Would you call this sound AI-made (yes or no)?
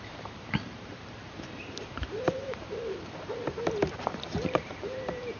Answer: yes